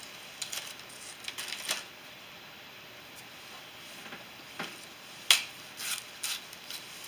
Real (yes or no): yes